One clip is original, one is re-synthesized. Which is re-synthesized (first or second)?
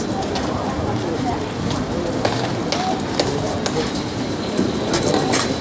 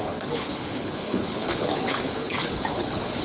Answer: second